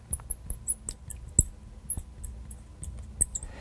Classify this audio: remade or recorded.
recorded